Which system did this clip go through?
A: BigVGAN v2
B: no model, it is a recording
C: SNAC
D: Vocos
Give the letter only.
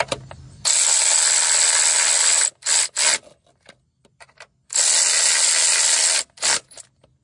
B